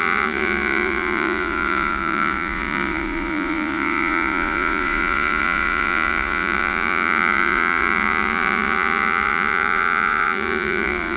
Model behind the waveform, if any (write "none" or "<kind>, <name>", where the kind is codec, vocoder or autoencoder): vocoder, Vocos